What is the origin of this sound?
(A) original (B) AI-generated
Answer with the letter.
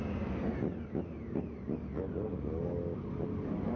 A